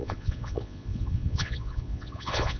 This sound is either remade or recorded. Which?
remade